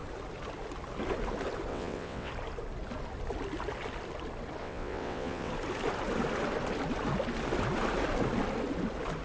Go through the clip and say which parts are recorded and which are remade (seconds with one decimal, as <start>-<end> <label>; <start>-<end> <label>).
0.0-1.7 recorded; 1.7-2.3 remade; 2.3-4.6 recorded; 4.6-5.5 remade; 5.5-9.2 recorded